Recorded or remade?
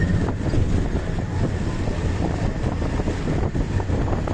recorded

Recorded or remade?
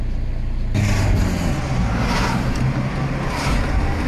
recorded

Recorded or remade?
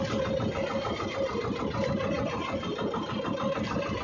recorded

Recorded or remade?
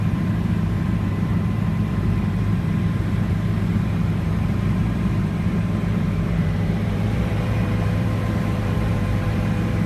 remade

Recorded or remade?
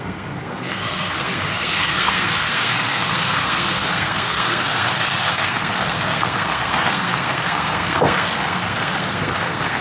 remade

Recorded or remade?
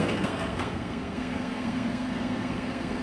remade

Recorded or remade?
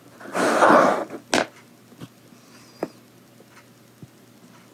recorded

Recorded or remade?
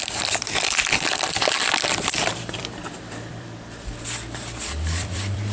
remade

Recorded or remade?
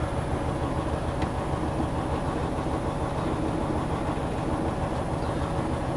recorded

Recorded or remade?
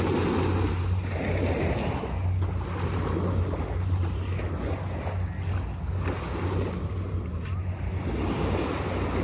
recorded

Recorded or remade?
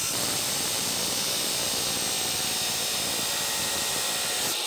recorded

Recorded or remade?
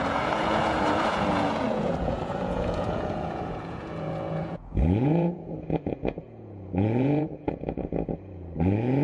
remade